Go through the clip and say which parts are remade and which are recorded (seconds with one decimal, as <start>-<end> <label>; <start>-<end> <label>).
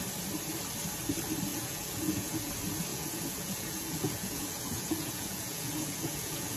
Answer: 0.0-1.5 recorded; 1.5-2.5 remade; 2.5-2.9 recorded; 2.9-6.6 remade